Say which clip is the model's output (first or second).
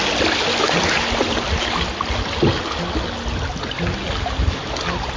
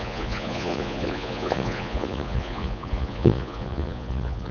second